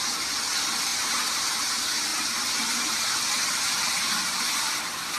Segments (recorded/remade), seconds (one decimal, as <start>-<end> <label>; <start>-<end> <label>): 0.0-0.9 recorded; 0.9-1.7 remade; 1.7-2.1 recorded; 2.1-4.1 remade; 4.1-5.2 recorded